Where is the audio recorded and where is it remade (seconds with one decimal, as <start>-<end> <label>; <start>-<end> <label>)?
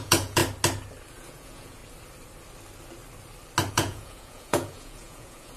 0.0-0.4 remade; 0.4-1.1 recorded; 1.1-1.8 remade; 1.8-3.7 recorded; 3.7-5.6 remade